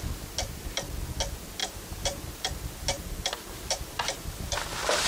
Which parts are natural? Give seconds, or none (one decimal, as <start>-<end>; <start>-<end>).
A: 0.0-1.6